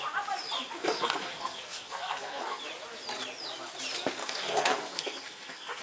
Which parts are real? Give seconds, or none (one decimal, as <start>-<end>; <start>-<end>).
0.0-0.8; 2.6-4.2

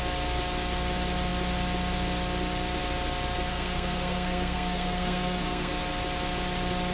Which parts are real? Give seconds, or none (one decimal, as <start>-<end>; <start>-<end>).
0.0-3.5; 5.7-6.9